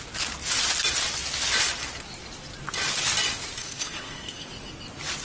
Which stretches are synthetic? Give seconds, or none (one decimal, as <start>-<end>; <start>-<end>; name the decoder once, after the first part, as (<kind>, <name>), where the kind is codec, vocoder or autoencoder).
3.6-4.5 (codec, SNAC)